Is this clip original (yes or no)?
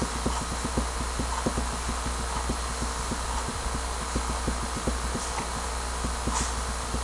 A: yes